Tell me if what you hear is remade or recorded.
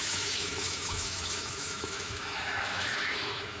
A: remade